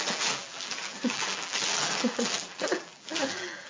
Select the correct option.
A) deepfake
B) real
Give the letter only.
A